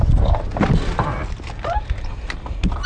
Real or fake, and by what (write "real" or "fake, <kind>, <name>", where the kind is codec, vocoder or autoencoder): real